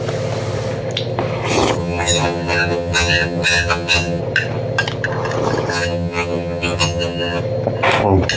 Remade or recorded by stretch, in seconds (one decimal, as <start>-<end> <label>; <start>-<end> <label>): 0.0-1.8 recorded; 1.8-4.2 remade; 4.2-5.7 recorded; 5.7-7.4 remade; 7.4-8.4 recorded